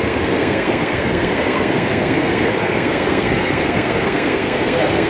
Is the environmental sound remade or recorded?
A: remade